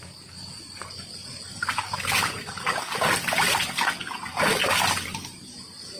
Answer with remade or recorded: recorded